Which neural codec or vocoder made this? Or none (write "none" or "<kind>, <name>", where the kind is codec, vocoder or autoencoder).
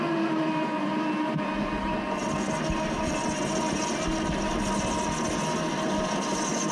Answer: none